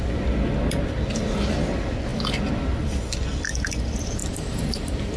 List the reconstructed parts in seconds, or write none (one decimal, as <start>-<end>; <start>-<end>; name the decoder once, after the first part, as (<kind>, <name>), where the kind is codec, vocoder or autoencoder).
4.2-5.2 (vocoder, BigVGAN v2)